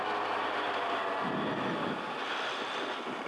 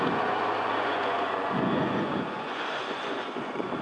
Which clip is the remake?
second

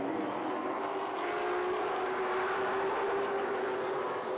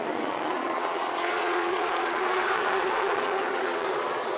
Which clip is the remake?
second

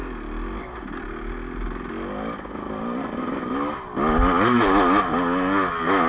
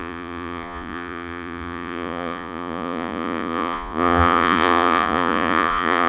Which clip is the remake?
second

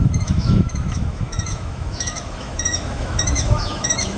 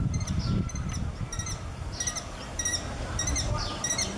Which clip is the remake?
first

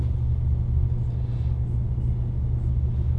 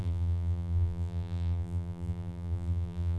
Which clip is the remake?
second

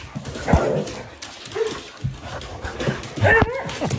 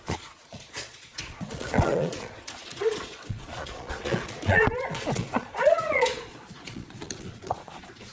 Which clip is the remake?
second